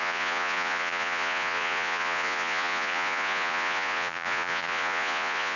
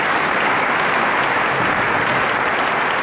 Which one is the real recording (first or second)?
second